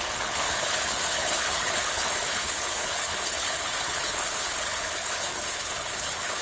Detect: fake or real fake